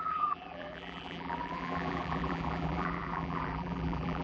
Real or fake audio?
fake